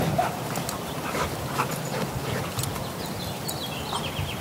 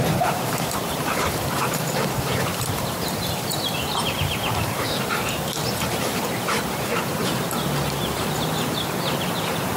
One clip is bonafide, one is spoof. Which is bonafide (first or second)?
first